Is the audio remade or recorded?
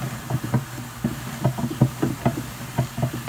recorded